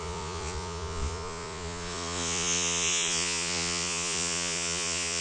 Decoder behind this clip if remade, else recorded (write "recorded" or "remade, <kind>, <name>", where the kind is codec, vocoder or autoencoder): remade, vocoder, Vocos